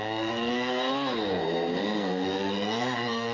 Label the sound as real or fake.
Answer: fake